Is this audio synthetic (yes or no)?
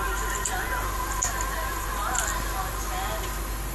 no